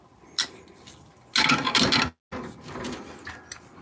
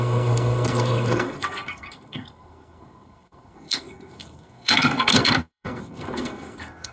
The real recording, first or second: first